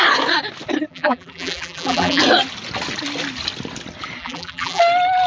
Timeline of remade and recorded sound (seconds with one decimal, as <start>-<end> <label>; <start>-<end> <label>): 0.0-0.9 recorded; 0.9-2.2 remade; 2.2-4.2 recorded; 4.2-4.8 remade; 4.8-5.3 recorded